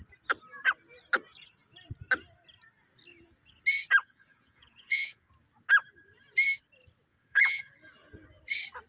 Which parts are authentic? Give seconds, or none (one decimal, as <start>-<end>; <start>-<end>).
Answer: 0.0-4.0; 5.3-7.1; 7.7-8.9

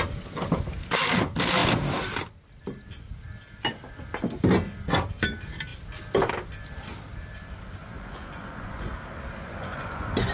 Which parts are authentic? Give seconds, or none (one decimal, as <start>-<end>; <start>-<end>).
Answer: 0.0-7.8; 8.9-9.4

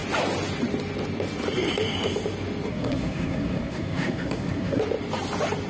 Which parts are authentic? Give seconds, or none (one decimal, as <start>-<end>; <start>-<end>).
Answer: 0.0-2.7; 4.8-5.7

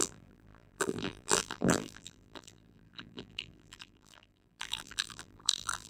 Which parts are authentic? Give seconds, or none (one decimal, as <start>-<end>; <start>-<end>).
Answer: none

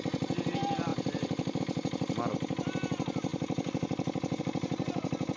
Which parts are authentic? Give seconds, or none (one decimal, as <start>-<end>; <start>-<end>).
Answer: 0.0-0.9; 1.6-5.4

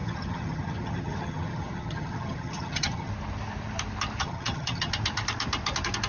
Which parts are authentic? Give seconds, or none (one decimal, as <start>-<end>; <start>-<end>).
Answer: 3.1-4.2; 4.9-6.1